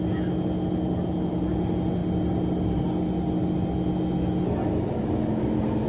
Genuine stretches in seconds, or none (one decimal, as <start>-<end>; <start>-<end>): 0.0-4.7